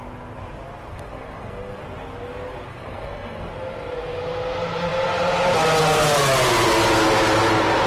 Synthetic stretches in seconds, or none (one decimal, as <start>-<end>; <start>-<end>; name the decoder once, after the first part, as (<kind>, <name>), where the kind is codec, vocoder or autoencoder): 0.9-1.8 (codec, SNAC); 2.7-3.5